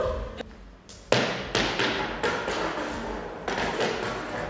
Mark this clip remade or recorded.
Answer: recorded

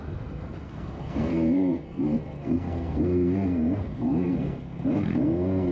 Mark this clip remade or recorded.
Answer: remade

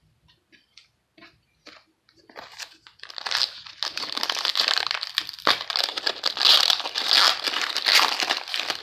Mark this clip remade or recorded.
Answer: recorded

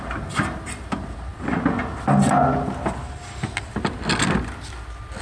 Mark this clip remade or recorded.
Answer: recorded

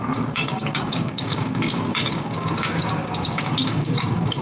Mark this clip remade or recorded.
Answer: remade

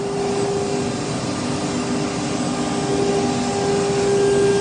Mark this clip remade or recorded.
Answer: recorded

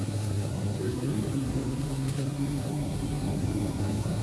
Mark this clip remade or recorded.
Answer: remade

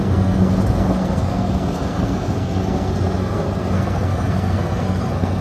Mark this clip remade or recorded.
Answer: remade